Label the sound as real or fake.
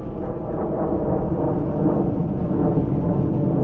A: real